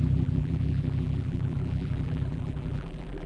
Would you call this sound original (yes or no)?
no